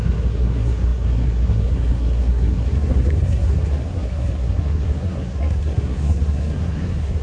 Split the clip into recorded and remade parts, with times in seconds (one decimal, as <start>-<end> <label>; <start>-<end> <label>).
0.0-7.2 remade